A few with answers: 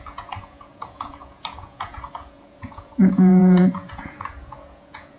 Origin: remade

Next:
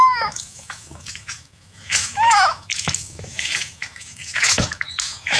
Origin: remade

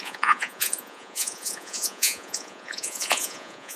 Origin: remade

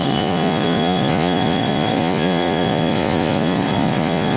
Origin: remade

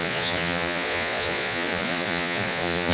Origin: remade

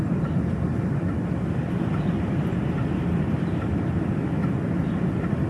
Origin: recorded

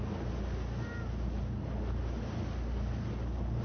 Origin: recorded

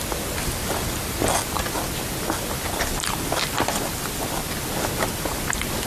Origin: recorded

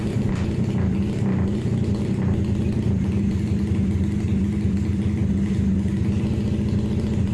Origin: recorded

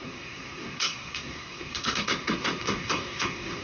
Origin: remade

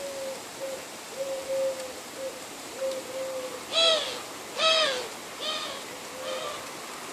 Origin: recorded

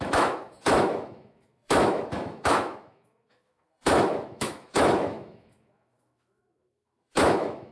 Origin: remade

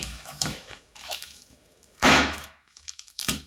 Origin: remade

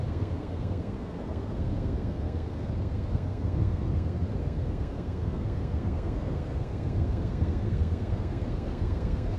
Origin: remade